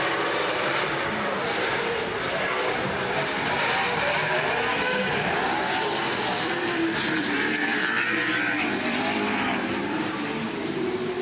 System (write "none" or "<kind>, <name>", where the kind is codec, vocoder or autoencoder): vocoder, BigVGAN v2